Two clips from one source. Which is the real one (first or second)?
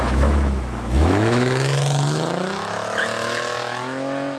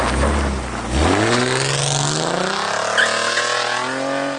second